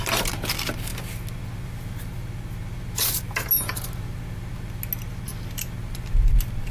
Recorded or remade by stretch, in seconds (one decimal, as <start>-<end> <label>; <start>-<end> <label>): 0.0-6.7 recorded